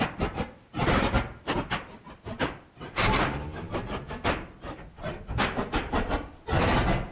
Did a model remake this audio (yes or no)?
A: no